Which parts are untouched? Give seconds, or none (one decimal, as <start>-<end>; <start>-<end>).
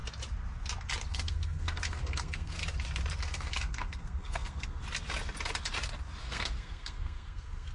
0.0-1.1; 2.6-3.2; 4.8-6.2